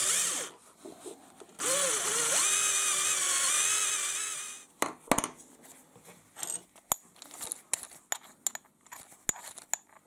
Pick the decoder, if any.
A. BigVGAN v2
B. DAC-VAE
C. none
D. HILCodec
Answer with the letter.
C